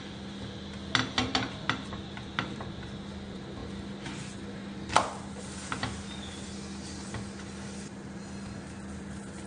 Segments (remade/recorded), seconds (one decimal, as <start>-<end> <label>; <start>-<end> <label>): 0.0-1.2 recorded; 1.2-2.7 remade; 2.7-3.6 recorded; 3.6-6.2 remade; 6.2-9.5 recorded